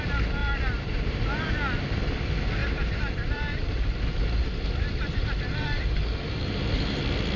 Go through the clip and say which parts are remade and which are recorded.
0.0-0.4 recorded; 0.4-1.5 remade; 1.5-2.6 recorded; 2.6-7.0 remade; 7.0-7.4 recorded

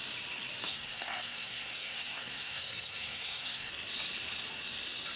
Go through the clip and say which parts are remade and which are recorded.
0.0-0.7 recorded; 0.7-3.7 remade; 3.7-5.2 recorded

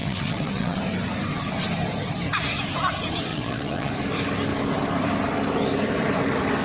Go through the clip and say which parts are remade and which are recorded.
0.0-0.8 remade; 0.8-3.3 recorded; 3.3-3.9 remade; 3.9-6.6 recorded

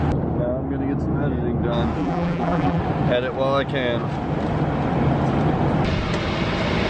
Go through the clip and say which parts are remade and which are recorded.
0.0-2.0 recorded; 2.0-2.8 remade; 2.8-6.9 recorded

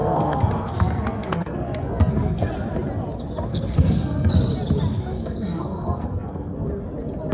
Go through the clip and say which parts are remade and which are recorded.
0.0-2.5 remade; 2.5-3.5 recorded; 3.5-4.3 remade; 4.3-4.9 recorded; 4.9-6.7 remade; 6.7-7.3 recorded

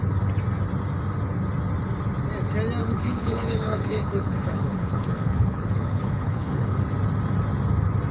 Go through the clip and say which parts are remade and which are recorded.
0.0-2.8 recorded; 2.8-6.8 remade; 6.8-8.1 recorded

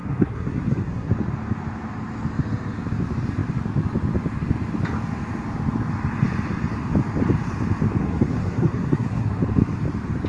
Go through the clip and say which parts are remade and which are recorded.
0.0-1.1 remade; 1.1-8.0 recorded; 8.0-9.4 remade; 9.4-10.3 recorded

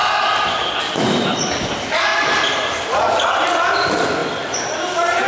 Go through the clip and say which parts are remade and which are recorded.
0.0-5.3 recorded